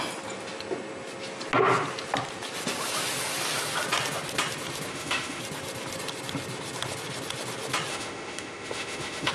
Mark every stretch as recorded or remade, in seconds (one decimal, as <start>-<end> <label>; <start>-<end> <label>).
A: 0.0-4.9 recorded; 4.9-5.4 remade; 5.4-7.9 recorded; 7.9-9.3 remade